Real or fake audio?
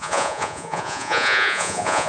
fake